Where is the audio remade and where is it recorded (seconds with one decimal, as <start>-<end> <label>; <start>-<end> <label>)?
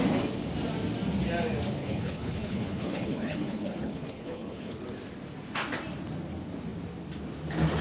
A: 0.0-1.8 recorded; 1.8-4.8 remade; 4.8-7.8 recorded